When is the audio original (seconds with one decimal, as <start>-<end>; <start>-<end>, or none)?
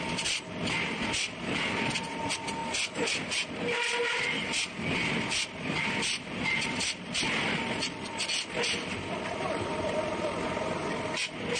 0.0-11.6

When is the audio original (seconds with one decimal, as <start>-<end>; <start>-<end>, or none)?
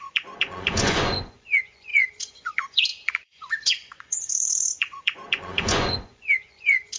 none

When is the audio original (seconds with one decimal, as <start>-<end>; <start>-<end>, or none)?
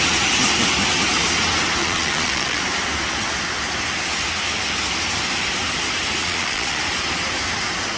0.0-1.8; 2.6-6.2; 6.8-8.0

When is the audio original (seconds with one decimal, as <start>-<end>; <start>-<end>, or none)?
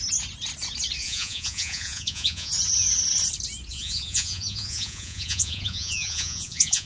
0.0-1.0; 2.5-3.7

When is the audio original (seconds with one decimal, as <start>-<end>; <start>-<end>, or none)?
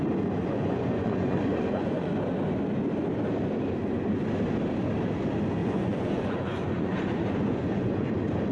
0.0-0.4; 2.1-5.6; 8.1-8.5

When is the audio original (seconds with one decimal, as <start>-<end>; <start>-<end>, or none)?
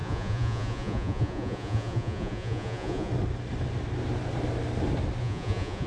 3.1-5.2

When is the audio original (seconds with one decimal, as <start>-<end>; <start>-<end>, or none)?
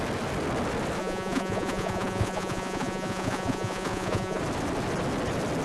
0.0-1.0; 4.4-5.6